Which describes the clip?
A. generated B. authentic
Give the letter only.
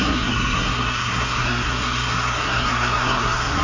A